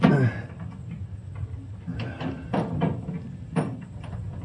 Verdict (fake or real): real